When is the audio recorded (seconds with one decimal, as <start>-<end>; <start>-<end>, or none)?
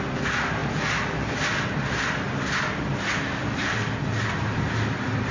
0.0-5.3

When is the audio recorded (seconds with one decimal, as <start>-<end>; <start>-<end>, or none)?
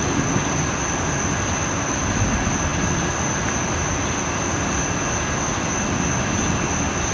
0.0-7.1